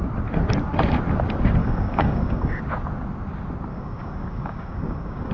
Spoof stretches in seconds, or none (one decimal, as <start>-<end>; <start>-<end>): 1.6-2.6; 3.7-5.3